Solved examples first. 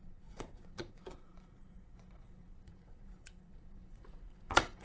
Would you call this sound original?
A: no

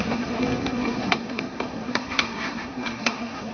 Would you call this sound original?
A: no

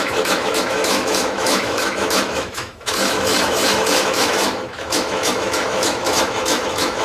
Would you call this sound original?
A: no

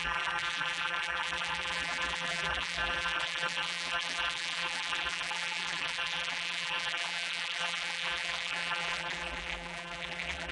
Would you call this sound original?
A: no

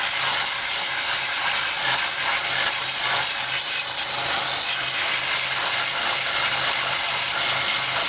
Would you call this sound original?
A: no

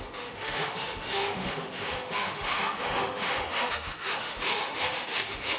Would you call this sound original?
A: no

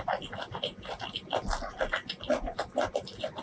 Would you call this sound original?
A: yes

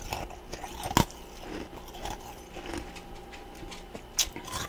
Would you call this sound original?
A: yes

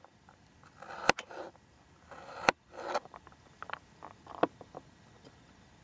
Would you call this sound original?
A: yes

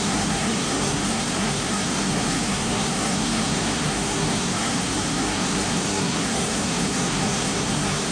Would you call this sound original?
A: no